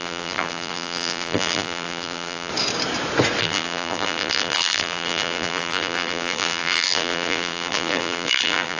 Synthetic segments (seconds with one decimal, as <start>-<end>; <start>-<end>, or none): 0.0-2.5; 3.4-8.8